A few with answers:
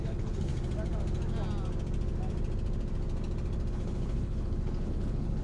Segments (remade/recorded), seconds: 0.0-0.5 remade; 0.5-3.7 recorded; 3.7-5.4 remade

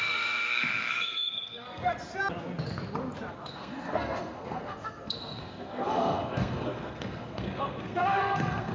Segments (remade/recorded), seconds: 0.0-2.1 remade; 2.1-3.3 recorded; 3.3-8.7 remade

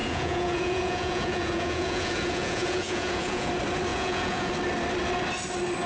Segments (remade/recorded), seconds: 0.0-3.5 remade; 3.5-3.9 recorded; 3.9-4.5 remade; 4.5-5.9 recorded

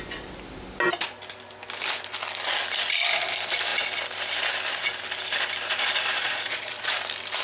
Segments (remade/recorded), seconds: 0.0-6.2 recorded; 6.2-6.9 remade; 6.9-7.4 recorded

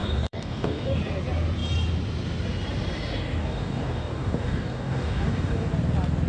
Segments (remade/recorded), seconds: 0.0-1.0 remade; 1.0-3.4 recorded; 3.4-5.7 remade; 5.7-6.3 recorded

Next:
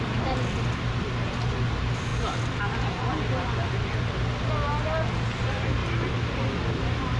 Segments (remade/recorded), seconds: 0.0-7.2 recorded

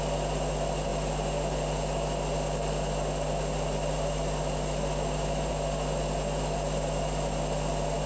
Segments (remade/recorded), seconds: 0.0-8.1 recorded

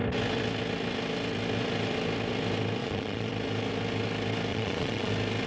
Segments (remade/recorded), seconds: 0.0-2.8 recorded; 2.8-3.3 remade; 3.3-4.5 recorded; 4.5-5.1 remade; 5.1-5.5 recorded